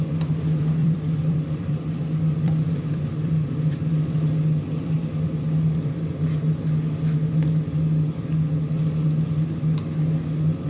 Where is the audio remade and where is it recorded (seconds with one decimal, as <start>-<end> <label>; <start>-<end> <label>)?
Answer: 0.0-0.8 recorded; 0.8-3.7 remade; 3.7-10.7 recorded